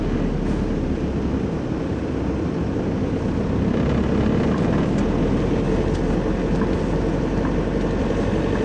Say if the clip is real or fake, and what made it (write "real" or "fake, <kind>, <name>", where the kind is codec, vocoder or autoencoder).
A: real